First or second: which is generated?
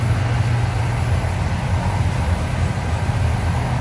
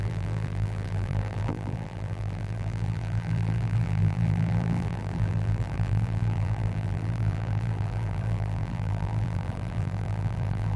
second